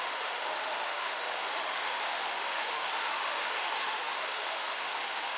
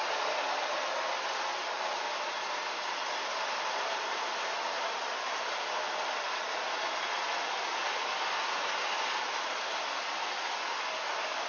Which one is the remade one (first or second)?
first